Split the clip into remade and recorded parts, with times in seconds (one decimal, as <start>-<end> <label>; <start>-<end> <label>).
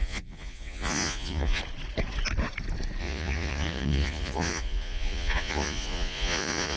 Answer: 0.0-1.6 remade; 1.6-3.0 recorded; 3.0-6.8 remade